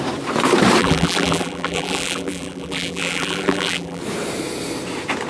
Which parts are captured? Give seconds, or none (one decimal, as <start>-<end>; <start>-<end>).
0.0-0.8; 4.0-5.3